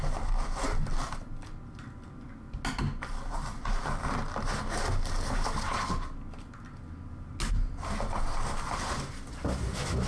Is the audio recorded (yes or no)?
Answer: yes